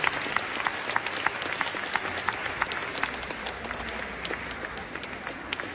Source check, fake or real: real